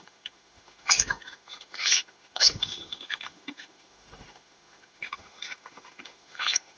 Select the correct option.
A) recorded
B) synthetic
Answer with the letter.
B